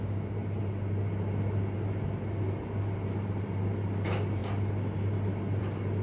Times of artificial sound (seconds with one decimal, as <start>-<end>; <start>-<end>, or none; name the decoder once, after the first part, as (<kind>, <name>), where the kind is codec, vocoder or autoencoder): none